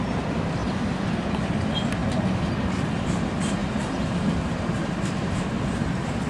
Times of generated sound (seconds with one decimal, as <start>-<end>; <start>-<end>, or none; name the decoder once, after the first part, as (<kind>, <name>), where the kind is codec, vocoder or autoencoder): 3.6-5.6 (vocoder, BigVGAN v2)